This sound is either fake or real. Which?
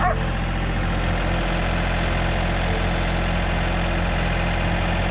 real